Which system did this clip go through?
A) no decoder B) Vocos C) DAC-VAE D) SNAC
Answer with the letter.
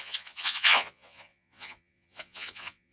B